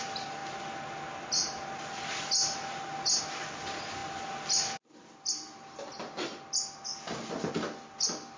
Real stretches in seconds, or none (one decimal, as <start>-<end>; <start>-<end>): 0.0-8.4